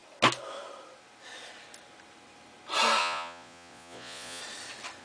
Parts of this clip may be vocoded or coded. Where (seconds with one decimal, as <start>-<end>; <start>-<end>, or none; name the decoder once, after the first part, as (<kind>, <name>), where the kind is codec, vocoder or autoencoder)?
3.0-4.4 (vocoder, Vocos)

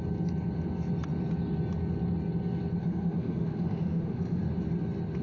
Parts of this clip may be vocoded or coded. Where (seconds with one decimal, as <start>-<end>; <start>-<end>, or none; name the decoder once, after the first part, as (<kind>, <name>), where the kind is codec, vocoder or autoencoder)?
2.8-4.4 (autoencoder, DAC-VAE)

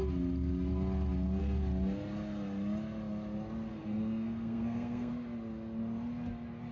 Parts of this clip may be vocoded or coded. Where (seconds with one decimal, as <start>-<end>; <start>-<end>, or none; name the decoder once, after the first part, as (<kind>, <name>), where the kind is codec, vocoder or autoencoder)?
3.7-5.1 (codec, SNAC)

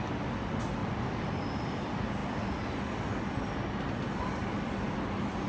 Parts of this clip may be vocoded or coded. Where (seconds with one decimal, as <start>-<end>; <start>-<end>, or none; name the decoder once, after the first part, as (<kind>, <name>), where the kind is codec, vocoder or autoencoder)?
0.8-1.6 (vocoder, BigVGAN v2)

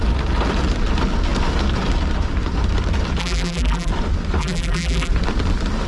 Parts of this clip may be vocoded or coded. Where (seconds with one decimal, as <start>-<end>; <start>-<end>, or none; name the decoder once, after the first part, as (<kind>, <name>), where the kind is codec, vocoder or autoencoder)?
3.2-3.9 (vocoder, BigVGAN v2); 4.4-5.1

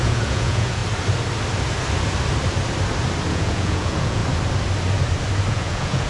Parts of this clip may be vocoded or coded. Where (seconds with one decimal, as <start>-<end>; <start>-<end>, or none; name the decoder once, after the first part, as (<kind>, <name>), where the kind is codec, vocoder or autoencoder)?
0.0-0.8 (vocoder, Vocos); 3.3-4.2; 5.5-6.1